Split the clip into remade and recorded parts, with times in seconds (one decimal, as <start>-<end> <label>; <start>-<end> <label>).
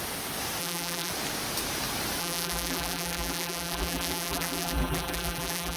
0.0-0.6 recorded; 0.6-1.1 remade; 1.1-2.2 recorded; 2.2-5.8 remade